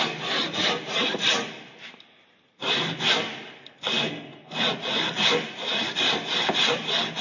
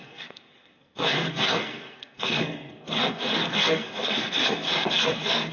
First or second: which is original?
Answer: first